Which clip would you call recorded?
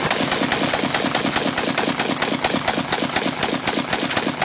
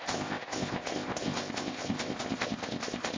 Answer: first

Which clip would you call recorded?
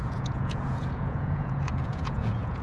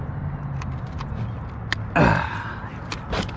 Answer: second